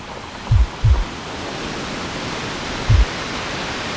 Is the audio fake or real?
real